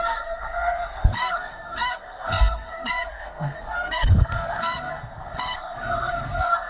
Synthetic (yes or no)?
yes